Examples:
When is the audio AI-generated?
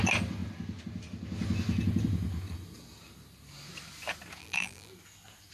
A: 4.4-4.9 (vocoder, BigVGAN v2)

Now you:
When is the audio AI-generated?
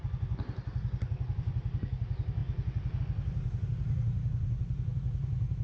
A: none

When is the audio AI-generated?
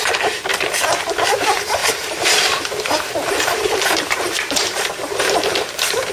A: 0.0-0.5 (vocoder, BigVGAN v2); 1.3-6.1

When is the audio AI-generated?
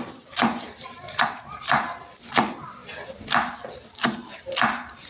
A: 0.5-1.7 (vocoder, BigVGAN v2)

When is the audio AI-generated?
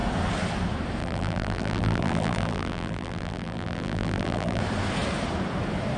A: 1.0-4.6 (vocoder, BigVGAN v2)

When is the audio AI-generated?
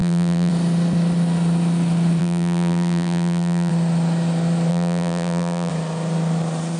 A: 0.0-0.5 (vocoder, BigVGAN v2); 2.2-3.7; 4.7-5.7